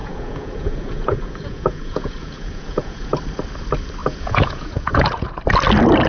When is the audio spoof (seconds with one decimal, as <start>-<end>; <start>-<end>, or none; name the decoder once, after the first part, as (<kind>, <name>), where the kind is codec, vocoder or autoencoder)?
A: 0.0-3.2 (vocoder, Vocos); 4.0-5.4